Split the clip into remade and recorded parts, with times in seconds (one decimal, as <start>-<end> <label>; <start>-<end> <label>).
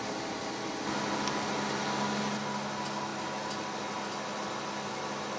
0.0-5.4 recorded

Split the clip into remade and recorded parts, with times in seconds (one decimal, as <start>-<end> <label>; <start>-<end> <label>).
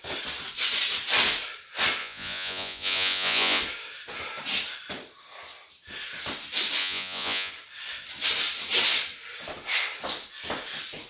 0.0-2.0 recorded; 2.0-3.6 remade; 3.6-6.8 recorded; 6.8-7.5 remade; 7.5-11.1 recorded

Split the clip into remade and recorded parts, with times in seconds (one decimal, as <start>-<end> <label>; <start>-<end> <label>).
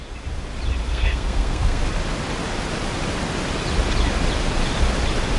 0.0-0.9 recorded; 0.9-1.8 remade; 1.8-5.4 recorded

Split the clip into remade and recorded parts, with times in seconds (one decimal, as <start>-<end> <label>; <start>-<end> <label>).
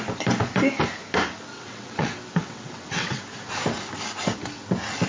0.0-1.5 recorded; 1.5-3.2 remade; 3.2-5.1 recorded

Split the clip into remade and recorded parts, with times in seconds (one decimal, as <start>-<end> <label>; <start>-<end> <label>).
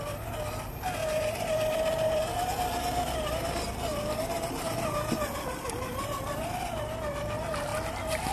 0.0-1.0 recorded; 1.0-2.2 remade; 2.2-8.3 recorded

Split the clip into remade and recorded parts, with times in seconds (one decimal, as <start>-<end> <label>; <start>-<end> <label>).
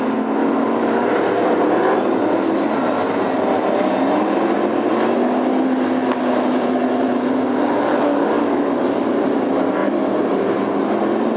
0.0-0.4 recorded; 0.4-1.1 remade; 1.1-7.9 recorded; 7.9-8.7 remade; 8.7-11.4 recorded